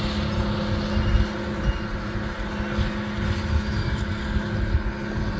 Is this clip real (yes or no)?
yes